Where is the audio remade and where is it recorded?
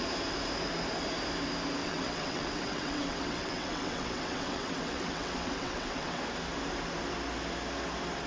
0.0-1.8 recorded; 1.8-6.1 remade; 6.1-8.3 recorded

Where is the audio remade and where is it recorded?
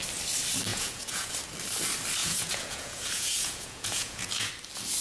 0.0-0.7 recorded; 0.7-1.3 remade; 1.3-2.2 recorded; 2.2-4.5 remade; 4.5-5.0 recorded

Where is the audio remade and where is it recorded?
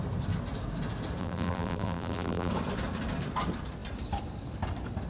0.0-1.2 recorded; 1.2-2.5 remade; 2.5-5.1 recorded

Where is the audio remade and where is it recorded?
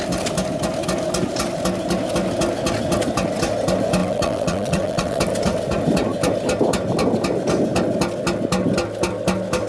0.0-4.0 recorded; 4.0-5.2 remade; 5.2-9.7 recorded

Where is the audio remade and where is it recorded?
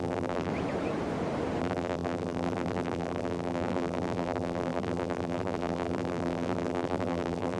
0.0-0.5 remade; 0.5-1.6 recorded; 1.6-7.6 remade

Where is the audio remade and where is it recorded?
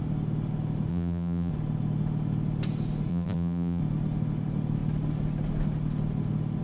0.0-0.9 recorded; 0.9-1.5 remade; 1.5-3.1 recorded; 3.1-3.8 remade; 3.8-6.6 recorded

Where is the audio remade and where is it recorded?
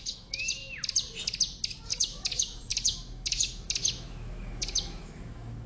0.0-0.6 remade; 0.6-1.9 recorded; 1.9-5.7 remade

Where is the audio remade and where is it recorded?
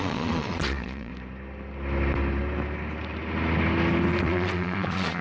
0.0-1.1 remade; 1.1-4.2 recorded; 4.2-5.2 remade